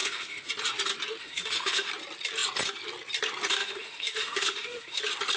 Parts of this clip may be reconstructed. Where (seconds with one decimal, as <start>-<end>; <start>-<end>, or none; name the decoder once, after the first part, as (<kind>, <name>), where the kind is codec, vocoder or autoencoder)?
0.0-0.5 (autoencoder, DAC-VAE); 1.2-1.9; 3.6-5.0